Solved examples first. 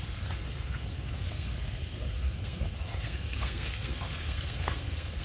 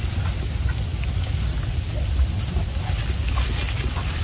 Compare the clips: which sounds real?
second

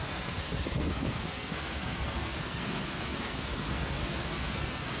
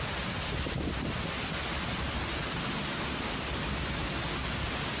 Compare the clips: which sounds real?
second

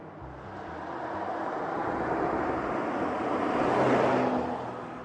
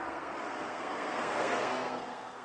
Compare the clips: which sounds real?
first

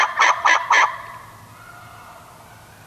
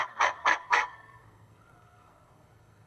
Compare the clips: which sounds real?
first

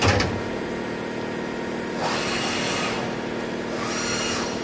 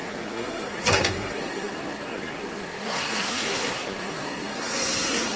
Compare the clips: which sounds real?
first